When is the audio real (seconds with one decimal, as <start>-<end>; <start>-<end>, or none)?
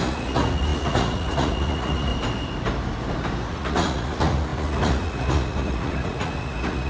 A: 2.1-3.5